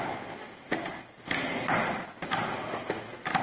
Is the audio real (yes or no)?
yes